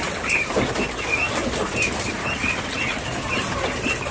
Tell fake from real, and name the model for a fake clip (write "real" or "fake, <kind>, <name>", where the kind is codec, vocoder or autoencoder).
real